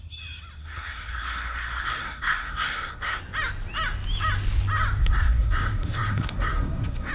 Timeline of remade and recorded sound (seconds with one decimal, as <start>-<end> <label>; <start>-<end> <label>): 0.0-0.6 recorded; 0.6-3.2 remade; 3.2-5.0 recorded; 5.0-7.1 remade